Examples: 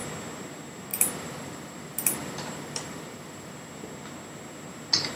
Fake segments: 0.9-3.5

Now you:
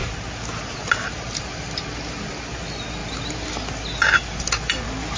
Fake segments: none

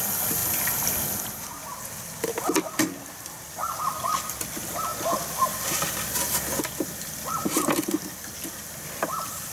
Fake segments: none

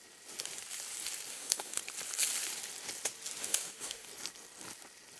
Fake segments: 1.3-1.8; 3.4-4.1

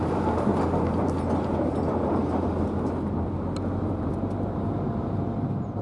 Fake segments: 0.0-0.5; 4.0-5.8

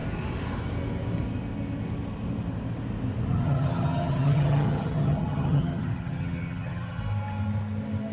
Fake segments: 3.3-7.0